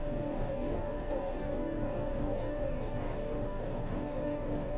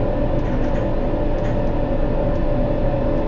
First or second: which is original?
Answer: second